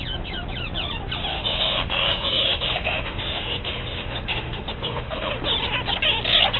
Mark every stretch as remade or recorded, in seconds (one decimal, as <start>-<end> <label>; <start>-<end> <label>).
0.0-1.3 recorded; 1.3-5.3 remade; 5.3-6.6 recorded